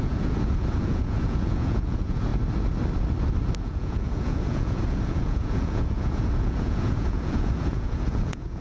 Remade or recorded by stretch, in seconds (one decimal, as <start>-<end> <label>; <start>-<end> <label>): 0.0-2.3 remade; 2.3-3.6 recorded; 3.6-8.6 remade